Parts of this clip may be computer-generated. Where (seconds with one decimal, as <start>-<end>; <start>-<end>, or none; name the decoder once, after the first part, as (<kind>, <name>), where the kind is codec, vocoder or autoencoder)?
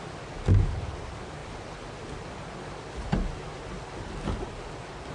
none